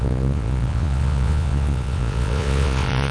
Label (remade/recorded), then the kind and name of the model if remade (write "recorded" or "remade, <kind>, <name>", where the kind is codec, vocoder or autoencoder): remade, vocoder, Vocos